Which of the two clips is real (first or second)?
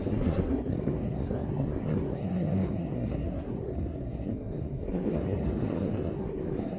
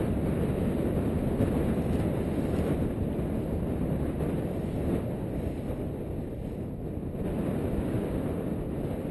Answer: second